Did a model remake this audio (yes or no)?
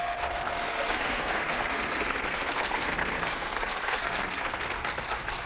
yes